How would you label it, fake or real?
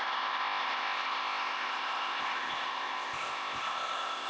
fake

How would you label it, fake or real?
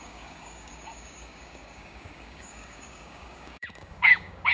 fake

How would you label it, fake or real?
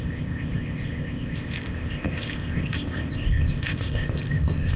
fake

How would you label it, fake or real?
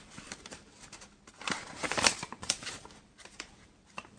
fake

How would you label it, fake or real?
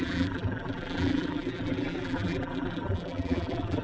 fake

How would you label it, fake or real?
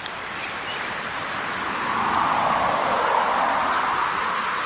real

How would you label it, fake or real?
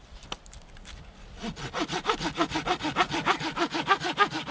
real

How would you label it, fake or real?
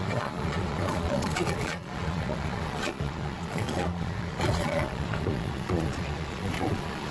fake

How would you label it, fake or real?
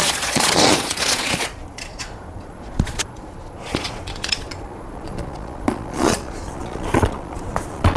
fake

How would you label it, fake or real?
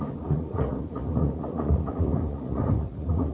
fake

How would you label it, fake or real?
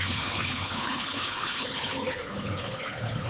fake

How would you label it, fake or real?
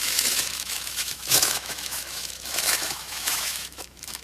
fake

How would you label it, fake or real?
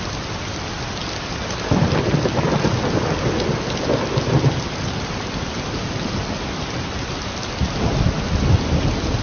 real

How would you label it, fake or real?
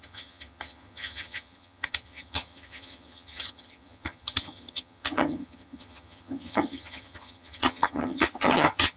fake